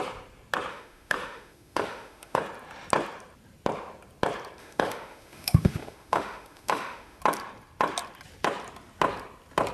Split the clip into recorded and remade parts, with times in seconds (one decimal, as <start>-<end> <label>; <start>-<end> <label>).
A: 0.0-0.7 recorded; 0.7-2.4 remade; 2.4-4.6 recorded; 4.6-7.2 remade; 7.2-9.7 recorded